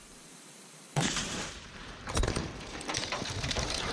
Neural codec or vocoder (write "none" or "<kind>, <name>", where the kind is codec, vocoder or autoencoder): vocoder, BigVGAN v2